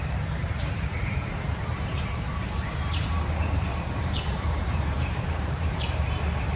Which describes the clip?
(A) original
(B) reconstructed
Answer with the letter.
B